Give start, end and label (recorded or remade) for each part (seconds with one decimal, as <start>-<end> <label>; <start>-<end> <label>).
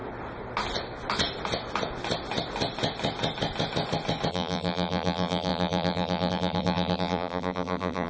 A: 0.0-4.3 recorded; 4.3-8.1 remade